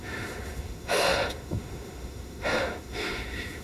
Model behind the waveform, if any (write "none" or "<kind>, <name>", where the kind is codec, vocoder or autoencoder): autoencoder, DAC-VAE